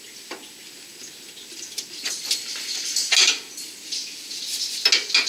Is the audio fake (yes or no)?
no